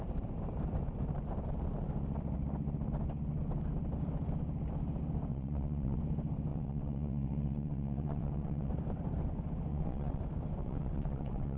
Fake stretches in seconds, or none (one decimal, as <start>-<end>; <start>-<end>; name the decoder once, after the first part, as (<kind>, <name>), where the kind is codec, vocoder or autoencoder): 5.3-6.0 (vocoder, WaveNeXt); 6.5-8.7; 9.7-10.2; 10.6-11.6